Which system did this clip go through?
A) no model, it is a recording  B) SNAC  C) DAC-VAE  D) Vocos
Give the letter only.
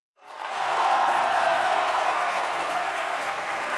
B